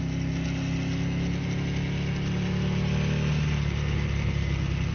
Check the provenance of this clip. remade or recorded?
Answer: recorded